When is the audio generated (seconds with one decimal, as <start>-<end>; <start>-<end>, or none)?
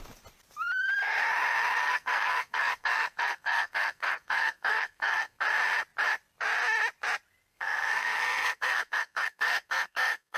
1.8-5.4; 7.5-10.4